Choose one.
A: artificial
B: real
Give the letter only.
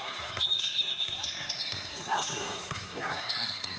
A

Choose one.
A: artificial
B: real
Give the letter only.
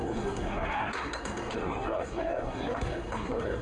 A